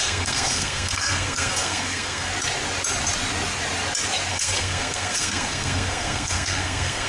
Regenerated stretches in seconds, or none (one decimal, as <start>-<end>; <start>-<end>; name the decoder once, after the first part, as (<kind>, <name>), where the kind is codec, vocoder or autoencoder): 0.0-2.3 (codec, SNAC); 4.3-7.1